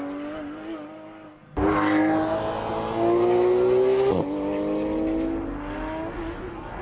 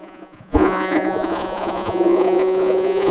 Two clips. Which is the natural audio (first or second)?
first